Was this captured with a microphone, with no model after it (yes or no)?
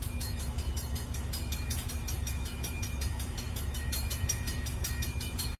no